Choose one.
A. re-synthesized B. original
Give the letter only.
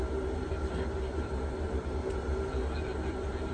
B